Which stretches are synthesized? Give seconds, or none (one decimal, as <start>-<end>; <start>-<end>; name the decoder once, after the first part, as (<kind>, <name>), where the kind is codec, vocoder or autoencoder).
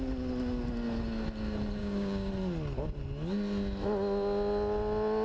1.8-2.3 (codec, DAC)